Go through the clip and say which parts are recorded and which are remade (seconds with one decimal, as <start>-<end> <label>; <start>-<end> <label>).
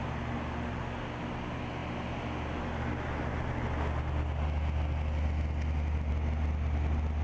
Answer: 0.0-7.2 recorded